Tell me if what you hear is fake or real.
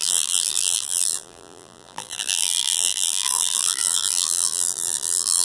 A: fake